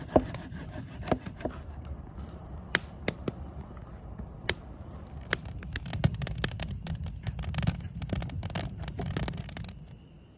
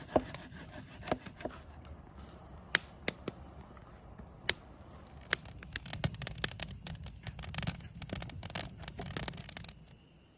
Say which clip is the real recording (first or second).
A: second